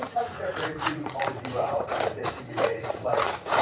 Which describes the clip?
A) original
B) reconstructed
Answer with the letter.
B